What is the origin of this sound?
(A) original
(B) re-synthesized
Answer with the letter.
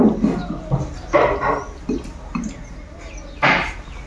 A